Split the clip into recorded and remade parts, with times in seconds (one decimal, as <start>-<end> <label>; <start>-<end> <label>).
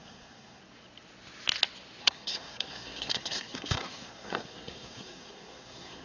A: 0.0-0.6 remade; 0.6-2.0 recorded; 2.0-6.0 remade